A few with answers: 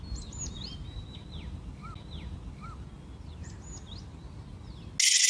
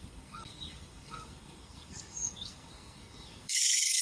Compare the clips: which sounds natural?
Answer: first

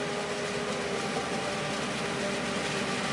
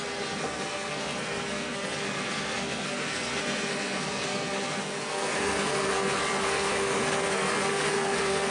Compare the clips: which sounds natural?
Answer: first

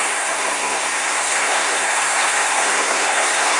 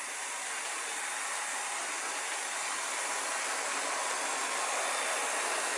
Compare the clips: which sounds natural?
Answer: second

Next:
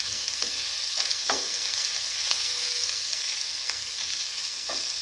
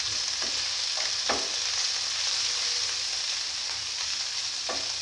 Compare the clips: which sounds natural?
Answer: second